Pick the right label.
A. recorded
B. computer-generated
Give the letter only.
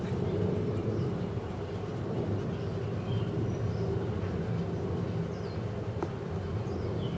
A